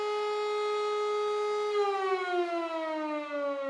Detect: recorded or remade recorded